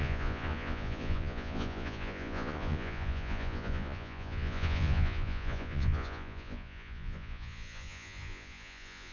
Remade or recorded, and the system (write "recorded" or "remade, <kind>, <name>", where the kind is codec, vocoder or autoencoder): remade, vocoder, Vocos